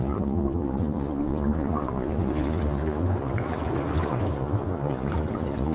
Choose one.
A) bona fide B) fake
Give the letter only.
B